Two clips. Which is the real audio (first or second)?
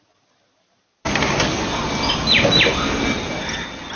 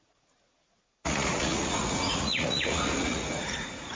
first